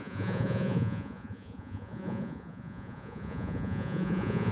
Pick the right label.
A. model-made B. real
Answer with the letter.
A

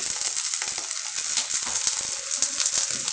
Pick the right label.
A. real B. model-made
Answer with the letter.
A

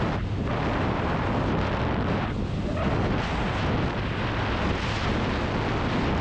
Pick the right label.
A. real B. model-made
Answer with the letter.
A